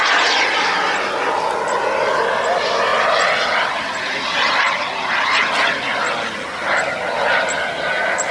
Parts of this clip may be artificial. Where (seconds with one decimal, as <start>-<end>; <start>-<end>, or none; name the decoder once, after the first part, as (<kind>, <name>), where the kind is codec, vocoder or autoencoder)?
none